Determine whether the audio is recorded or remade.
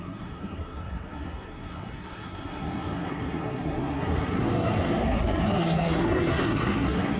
remade